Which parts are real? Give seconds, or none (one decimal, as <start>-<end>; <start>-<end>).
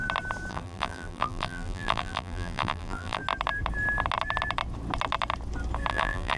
0.0-0.5; 3.2-5.9